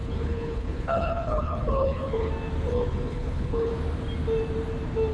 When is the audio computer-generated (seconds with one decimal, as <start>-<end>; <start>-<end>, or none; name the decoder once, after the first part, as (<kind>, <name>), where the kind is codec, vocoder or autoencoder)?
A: 0.0-2.3 (codec, HILCodec); 2.7-3.7